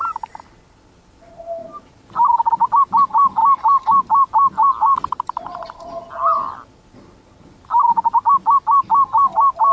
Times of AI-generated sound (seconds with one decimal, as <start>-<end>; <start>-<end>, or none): none